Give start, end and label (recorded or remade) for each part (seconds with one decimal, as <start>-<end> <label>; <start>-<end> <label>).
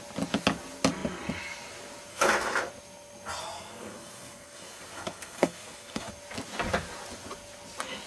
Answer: 0.0-2.1 recorded; 2.1-2.7 remade; 2.7-3.4 recorded; 3.4-6.1 remade; 6.1-8.1 recorded